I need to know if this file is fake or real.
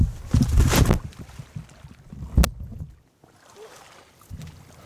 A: real